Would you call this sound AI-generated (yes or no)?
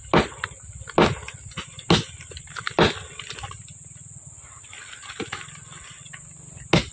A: no